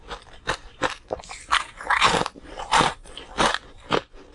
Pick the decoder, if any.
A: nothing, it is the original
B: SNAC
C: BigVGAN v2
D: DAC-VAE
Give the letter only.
C